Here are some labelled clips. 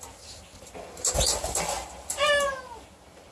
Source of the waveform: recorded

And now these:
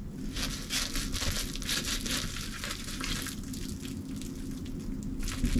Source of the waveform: recorded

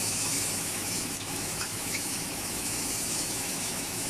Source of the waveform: remade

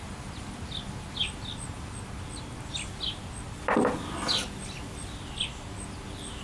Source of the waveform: recorded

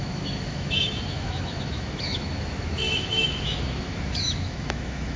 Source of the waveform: remade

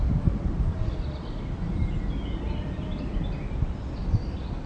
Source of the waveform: recorded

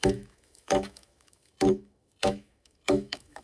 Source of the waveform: remade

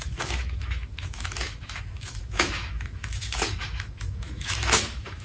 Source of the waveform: remade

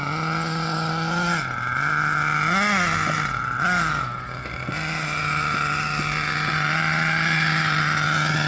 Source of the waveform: recorded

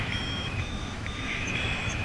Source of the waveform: remade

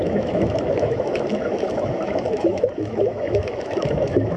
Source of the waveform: remade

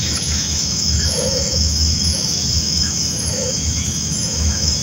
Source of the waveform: remade